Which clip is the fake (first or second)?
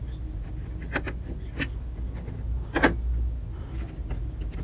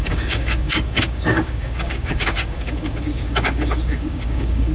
second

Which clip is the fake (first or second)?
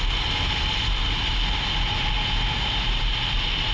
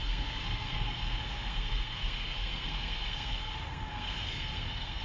second